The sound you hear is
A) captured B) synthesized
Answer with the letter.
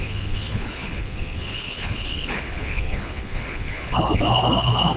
B